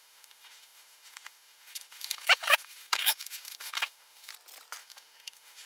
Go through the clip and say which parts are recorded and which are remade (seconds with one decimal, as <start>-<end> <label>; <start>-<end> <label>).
0.0-4.3 remade; 4.3-4.8 recorded; 4.8-5.7 remade